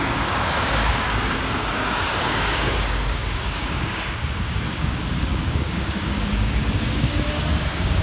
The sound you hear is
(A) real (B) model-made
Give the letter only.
B